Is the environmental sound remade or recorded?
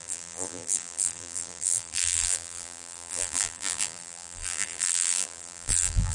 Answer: remade